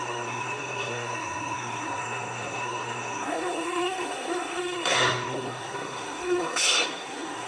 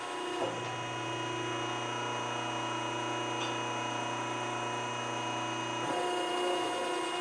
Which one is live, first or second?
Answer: second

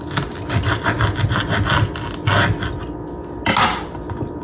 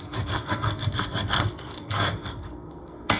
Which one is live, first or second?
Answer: first